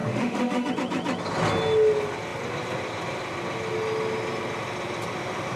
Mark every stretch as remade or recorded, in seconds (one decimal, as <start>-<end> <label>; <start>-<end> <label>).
0.0-0.7 remade; 0.7-5.6 recorded